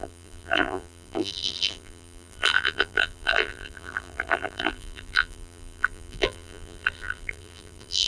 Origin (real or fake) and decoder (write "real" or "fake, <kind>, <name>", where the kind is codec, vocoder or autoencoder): fake, vocoder, BigVGAN v2